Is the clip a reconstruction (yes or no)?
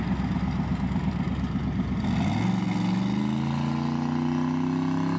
no